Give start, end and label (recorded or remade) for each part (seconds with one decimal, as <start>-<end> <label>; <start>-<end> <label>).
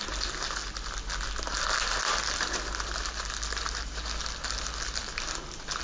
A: 0.0-5.8 recorded